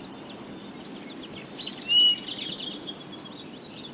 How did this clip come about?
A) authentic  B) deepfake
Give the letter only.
A